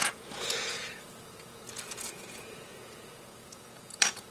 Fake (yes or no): yes